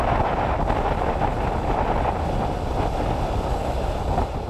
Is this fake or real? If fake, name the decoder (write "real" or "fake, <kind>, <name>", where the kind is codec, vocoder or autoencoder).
real